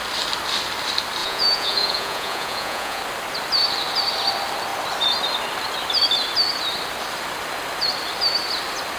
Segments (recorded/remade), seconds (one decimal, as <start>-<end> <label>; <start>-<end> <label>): 0.0-1.2 recorded; 1.2-3.0 remade; 3.0-9.0 recorded